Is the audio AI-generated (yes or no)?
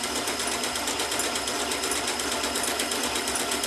no